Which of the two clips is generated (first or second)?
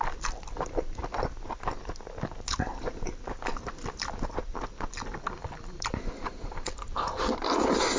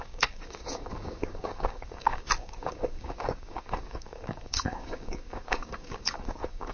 second